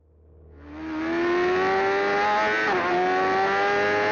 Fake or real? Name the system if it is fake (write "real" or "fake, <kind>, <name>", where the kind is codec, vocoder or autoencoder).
real